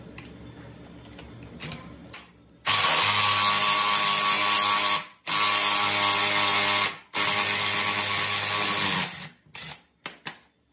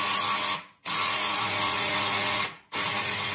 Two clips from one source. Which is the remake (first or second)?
second